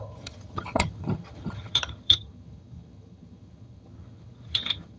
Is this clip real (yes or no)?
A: no